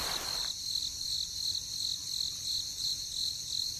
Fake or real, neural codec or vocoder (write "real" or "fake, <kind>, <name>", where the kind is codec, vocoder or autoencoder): real